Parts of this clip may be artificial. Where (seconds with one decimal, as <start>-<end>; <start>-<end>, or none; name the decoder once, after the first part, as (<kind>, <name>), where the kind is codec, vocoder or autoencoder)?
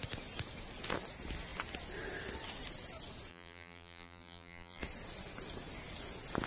3.3-4.8 (vocoder, BigVGAN v2)